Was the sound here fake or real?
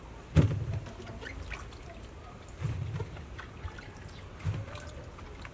real